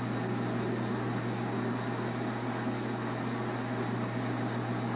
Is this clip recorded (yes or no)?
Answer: yes